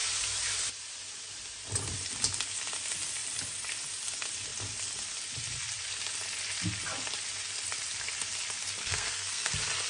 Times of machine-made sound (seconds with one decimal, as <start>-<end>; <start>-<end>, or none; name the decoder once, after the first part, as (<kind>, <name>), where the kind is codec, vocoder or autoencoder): 8.8-9.5 (codec, SNAC)